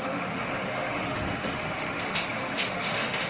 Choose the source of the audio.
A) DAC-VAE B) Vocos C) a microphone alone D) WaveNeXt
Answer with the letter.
A